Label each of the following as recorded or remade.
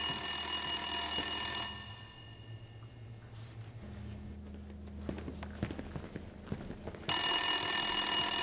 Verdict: recorded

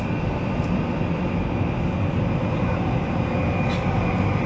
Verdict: recorded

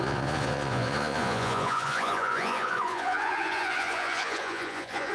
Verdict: remade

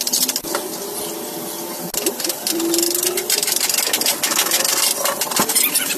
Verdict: recorded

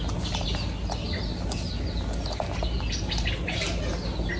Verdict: recorded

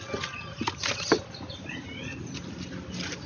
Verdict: recorded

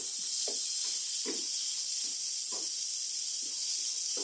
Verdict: recorded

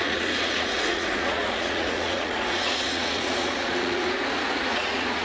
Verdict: remade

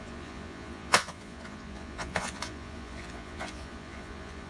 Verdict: remade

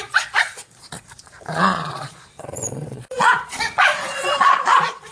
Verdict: remade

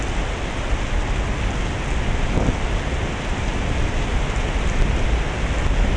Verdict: recorded